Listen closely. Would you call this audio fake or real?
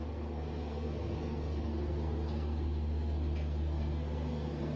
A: fake